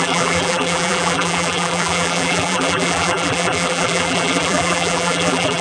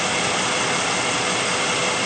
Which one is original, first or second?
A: second